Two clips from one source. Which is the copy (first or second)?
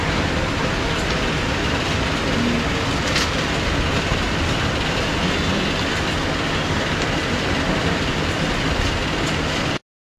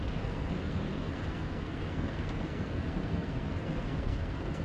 second